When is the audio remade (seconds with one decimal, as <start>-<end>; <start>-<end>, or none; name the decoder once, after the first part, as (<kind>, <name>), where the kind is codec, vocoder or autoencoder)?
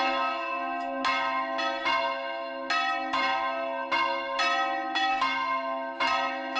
none